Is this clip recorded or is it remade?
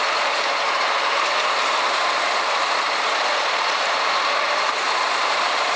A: remade